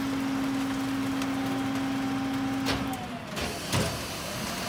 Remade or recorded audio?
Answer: recorded